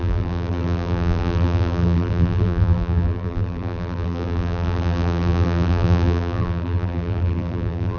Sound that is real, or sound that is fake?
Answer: fake